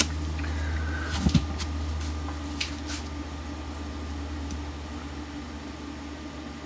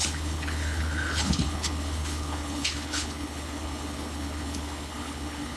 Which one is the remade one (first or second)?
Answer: second